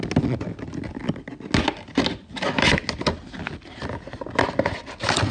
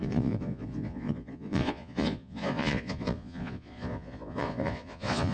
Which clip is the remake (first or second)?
second